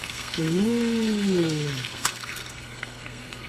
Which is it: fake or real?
fake